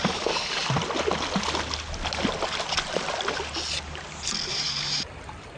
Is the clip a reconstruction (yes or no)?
no